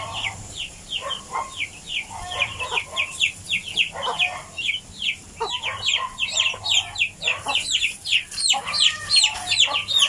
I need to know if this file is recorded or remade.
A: remade